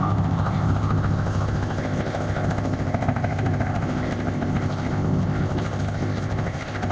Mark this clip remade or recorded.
remade